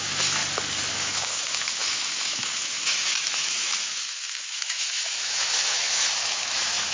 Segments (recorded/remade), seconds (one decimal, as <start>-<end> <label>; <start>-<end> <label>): 0.0-0.4 remade; 0.4-0.9 recorded; 0.9-6.9 remade